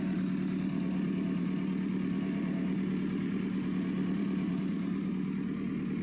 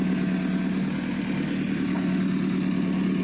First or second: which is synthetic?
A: first